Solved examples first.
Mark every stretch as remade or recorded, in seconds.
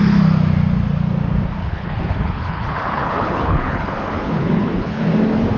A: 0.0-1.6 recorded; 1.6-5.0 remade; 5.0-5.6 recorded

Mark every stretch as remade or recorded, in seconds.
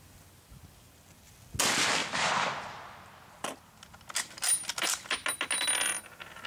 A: 0.0-6.5 recorded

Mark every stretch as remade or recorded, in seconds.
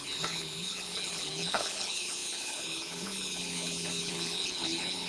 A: 0.0-5.1 remade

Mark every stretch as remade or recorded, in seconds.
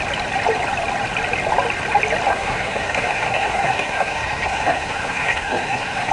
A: 0.0-2.3 recorded; 2.3-6.1 remade